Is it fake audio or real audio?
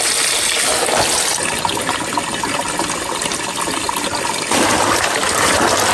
real